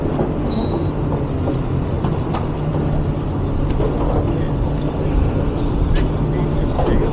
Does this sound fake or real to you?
real